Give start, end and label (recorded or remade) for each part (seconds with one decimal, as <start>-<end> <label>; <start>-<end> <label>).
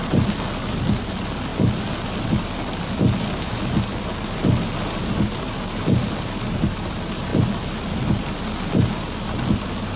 0.0-10.0 recorded